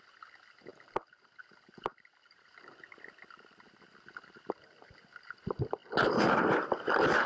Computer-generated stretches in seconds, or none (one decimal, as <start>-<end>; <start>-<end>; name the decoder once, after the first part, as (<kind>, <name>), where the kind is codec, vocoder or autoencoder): 0.0-0.7 (vocoder, BigVGAN v2); 1.4-5.8; 6.4-7.3